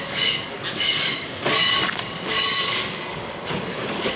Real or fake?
fake